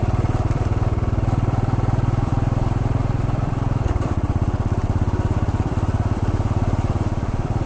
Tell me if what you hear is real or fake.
fake